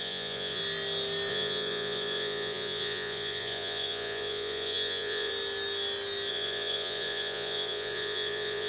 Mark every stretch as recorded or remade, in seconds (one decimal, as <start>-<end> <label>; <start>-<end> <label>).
0.0-0.6 remade; 0.6-1.3 recorded; 1.3-5.3 remade; 5.3-6.3 recorded; 6.3-8.7 remade